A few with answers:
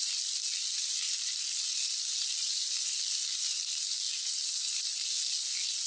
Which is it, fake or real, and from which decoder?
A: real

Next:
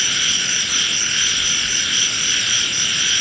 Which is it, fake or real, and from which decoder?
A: real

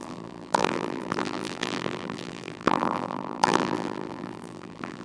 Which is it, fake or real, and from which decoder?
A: fake, vocoder, BigVGAN v2